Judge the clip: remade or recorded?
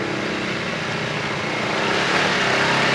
recorded